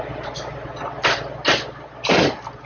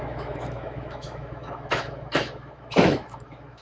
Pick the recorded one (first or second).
first